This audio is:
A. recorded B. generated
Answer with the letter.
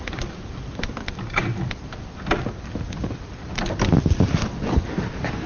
A